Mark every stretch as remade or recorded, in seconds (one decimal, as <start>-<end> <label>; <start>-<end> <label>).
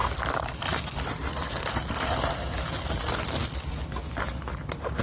0.0-5.0 recorded